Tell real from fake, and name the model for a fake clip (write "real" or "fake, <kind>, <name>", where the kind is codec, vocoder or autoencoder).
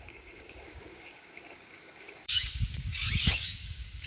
fake, codec, DAC